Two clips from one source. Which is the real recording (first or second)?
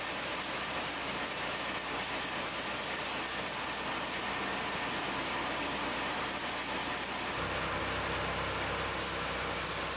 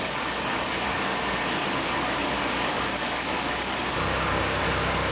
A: first